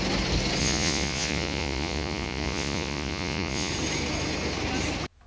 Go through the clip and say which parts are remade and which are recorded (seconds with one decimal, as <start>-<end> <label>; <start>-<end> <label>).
0.0-0.6 recorded; 0.6-3.7 remade; 3.7-5.3 recorded